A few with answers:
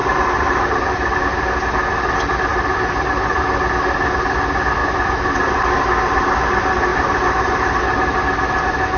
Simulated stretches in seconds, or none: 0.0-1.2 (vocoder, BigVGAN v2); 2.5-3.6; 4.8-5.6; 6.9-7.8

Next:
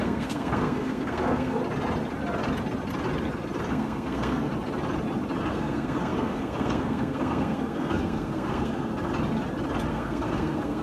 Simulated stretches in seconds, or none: 0.0-1.6 (codec, SNAC); 3.7-4.5; 5.5-8.9; 9.9-10.8

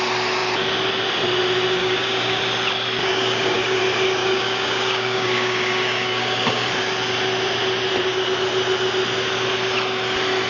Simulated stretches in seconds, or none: 1.8-2.4 (codec, DAC); 3.0-3.8; 4.2-6.7

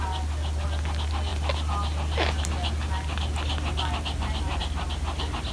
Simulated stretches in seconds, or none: none